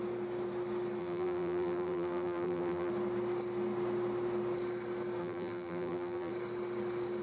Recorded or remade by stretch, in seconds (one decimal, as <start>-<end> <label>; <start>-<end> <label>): 0.0-1.0 recorded; 1.0-2.9 remade; 2.9-5.2 recorded; 5.2-6.3 remade; 6.3-7.2 recorded